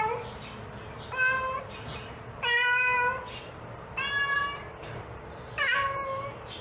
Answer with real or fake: fake